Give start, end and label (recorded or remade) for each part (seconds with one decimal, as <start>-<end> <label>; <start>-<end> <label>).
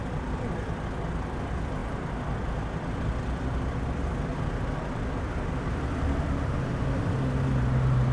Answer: 0.0-8.1 recorded